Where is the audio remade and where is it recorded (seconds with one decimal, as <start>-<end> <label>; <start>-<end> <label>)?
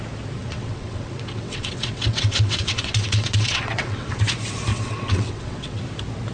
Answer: 0.0-0.4 recorded; 0.4-4.2 remade; 4.2-4.7 recorded; 4.7-5.8 remade; 5.8-6.3 recorded